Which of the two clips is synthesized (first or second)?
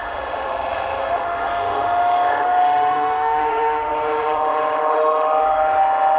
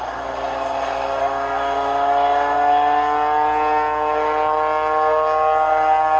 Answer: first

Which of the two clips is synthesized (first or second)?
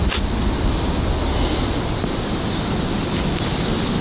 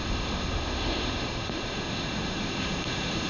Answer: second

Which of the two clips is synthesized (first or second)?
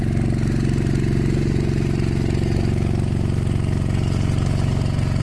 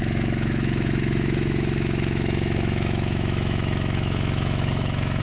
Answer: second